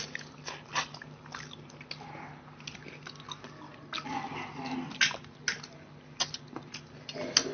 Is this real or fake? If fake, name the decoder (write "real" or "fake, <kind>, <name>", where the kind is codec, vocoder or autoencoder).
real